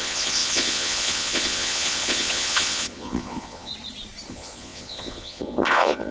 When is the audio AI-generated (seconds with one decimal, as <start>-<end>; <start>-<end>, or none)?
0.0-3.7; 4.3-6.1

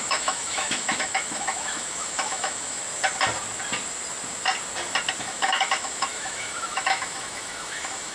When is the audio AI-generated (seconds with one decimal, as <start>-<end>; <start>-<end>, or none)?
0.0-2.8; 5.2-8.1

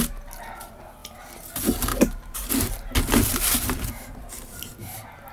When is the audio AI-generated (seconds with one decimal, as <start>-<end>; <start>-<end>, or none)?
1.9-2.5; 3.3-4.7

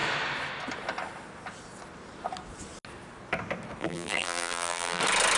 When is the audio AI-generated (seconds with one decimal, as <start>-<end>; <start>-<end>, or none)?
3.8-5.0

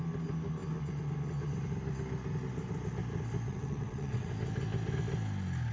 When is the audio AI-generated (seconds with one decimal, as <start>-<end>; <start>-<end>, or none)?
3.5-4.3

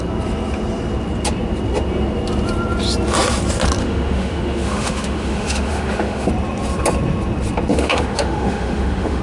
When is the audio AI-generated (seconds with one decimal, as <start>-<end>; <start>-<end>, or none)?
3.8-6.3; 7.7-9.2